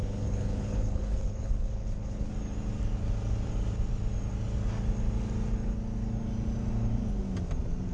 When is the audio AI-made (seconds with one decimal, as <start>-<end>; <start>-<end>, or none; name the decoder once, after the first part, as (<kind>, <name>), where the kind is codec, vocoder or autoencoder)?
0.0-2.3 (codec, HILCodec)